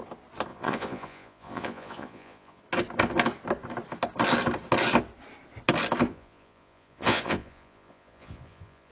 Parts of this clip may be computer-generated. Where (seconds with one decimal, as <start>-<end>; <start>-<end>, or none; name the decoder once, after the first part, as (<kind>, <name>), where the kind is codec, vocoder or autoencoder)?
0.5-2.6 (vocoder, Vocos); 6.1-8.9